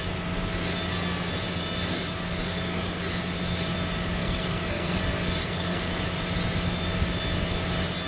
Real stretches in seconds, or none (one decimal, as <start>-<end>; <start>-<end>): 0.0-2.4; 3.0-4.2; 5.0-5.4; 6.0-8.1